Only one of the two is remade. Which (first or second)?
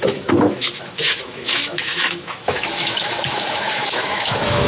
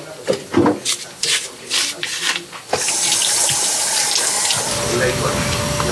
first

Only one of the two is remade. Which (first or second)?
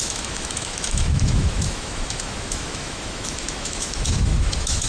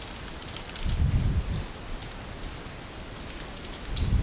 first